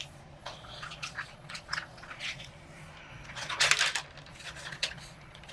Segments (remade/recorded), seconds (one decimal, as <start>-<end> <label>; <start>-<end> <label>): 0.0-0.4 recorded; 0.4-2.5 remade; 2.5-3.1 recorded; 3.1-3.7 remade; 3.7-4.3 recorded; 4.3-5.5 remade